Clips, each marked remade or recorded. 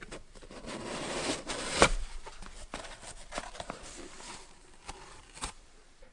remade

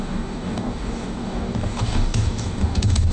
remade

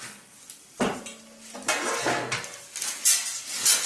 recorded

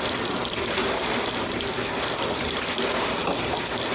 recorded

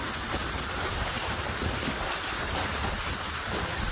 recorded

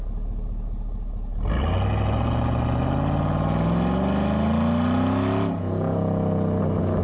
recorded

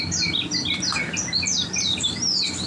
recorded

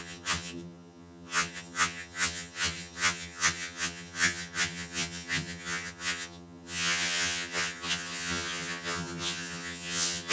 remade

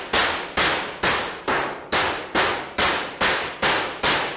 recorded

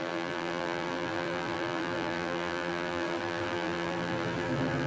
remade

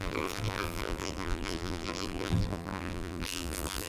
remade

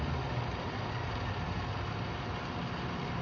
recorded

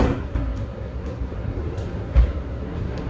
remade